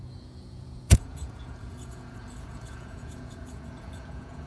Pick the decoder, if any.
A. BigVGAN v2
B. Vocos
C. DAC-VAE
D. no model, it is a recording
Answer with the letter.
B